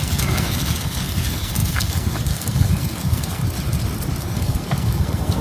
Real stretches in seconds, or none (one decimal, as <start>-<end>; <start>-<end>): 3.4-4.2